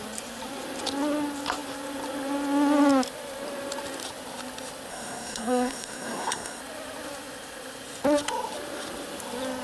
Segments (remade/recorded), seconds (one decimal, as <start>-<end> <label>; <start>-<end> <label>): 0.0-4.9 recorded; 4.9-6.6 remade; 6.6-9.6 recorded